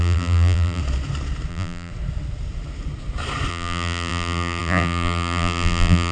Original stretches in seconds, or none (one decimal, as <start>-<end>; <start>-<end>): 0.8-1.5; 1.9-3.5

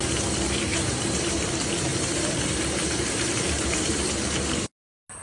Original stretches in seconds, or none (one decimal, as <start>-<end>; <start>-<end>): 0.0-0.7; 1.3-1.9; 4.1-5.2